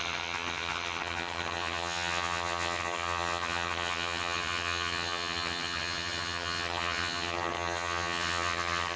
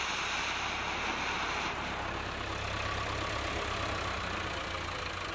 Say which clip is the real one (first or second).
second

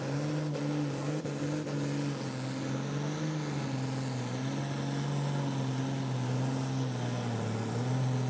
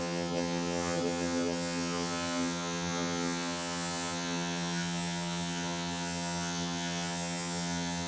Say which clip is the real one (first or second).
first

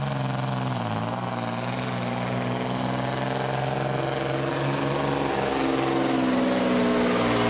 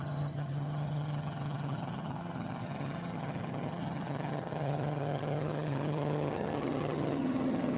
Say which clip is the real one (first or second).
first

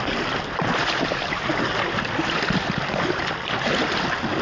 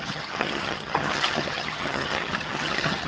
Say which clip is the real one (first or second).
first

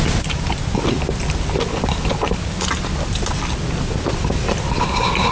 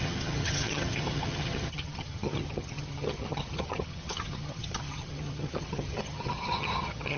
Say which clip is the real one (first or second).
first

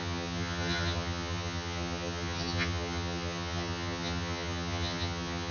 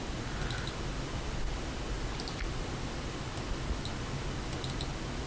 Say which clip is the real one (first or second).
second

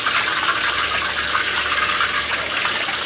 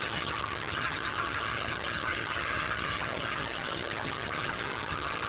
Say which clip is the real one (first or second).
first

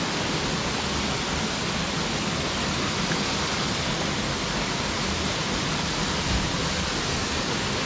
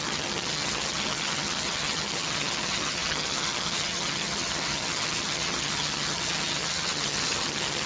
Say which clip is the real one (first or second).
first